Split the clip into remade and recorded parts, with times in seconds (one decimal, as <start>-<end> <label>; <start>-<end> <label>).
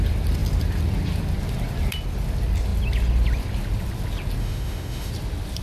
0.0-4.4 recorded; 4.4-5.1 remade; 5.1-5.6 recorded